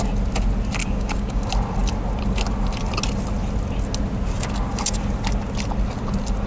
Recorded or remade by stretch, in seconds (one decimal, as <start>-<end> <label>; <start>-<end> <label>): 0.0-0.8 recorded; 0.8-1.4 remade; 1.4-6.5 recorded